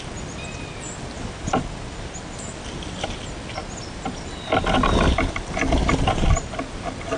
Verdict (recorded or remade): recorded